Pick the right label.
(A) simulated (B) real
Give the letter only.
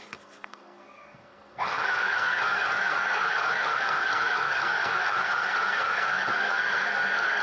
A